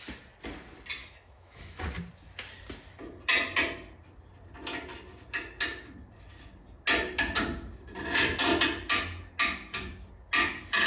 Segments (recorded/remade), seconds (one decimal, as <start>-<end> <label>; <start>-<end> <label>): 0.0-1.0 recorded; 1.0-1.8 remade; 1.8-10.9 recorded